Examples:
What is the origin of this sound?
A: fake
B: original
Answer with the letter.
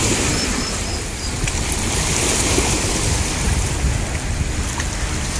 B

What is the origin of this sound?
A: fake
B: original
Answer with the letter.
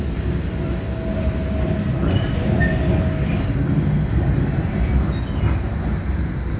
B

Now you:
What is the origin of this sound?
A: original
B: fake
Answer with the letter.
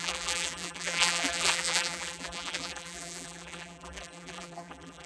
B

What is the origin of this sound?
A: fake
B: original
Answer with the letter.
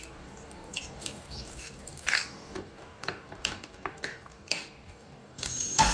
A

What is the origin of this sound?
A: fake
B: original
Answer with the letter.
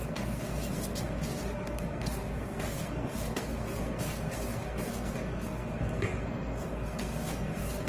A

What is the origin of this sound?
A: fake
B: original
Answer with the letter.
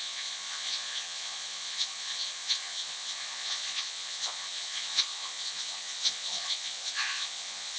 A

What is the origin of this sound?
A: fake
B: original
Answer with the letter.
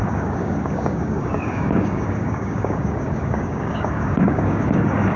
A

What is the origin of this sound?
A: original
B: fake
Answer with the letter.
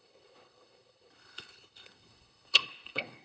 B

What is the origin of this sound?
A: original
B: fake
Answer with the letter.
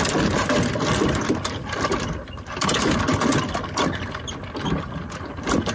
A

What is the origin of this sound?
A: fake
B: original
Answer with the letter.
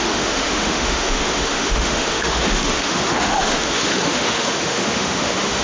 A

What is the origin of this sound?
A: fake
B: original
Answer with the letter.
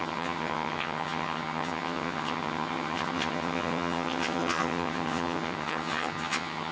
A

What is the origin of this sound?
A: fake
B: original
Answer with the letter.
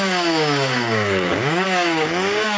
A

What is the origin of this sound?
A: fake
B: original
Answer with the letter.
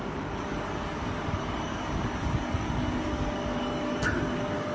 A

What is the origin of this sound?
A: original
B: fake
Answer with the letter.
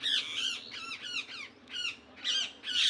A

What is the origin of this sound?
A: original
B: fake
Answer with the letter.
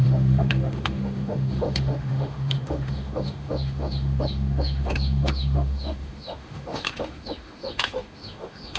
B